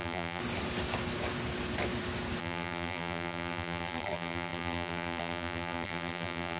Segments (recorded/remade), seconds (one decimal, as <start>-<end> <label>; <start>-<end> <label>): 0.0-0.4 remade; 0.4-2.4 recorded; 2.4-6.6 remade